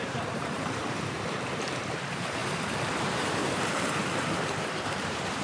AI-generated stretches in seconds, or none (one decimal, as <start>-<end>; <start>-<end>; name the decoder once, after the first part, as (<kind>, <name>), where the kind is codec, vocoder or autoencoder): 0.0-2.4 (vocoder, BigVGAN v2); 3.0-5.4